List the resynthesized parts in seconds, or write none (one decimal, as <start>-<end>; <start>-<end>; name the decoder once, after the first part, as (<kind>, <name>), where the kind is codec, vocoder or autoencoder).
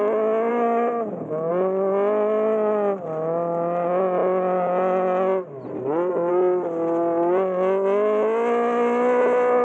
0.5-1.5 (autoencoder, DAC-VAE)